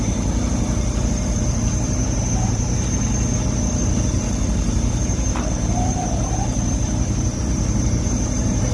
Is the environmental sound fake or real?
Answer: fake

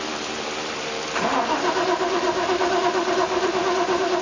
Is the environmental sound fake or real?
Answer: fake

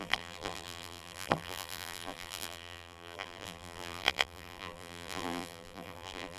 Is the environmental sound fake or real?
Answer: fake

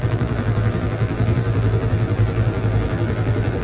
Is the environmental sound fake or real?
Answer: fake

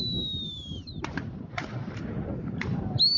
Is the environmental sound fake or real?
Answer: fake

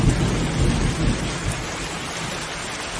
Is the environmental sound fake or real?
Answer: real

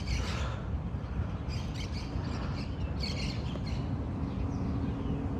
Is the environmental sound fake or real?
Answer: real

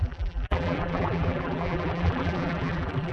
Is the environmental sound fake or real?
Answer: fake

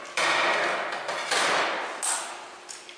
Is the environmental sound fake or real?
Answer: real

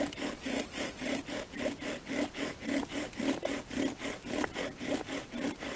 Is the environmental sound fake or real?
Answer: real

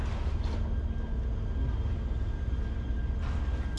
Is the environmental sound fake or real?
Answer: real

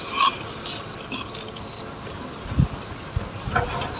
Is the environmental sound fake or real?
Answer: real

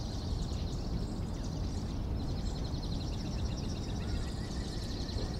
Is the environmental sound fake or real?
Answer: real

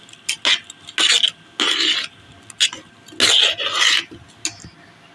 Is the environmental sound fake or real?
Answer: real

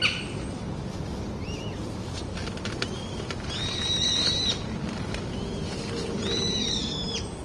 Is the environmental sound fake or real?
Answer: real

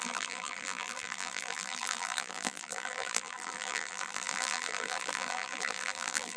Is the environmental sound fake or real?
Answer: fake